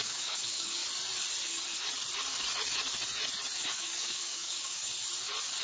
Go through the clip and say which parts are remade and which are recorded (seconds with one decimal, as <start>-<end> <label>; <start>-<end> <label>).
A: 0.0-0.8 remade; 0.8-3.7 recorded; 3.7-4.8 remade; 4.8-5.6 recorded